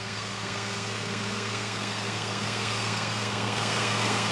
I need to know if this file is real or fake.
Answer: fake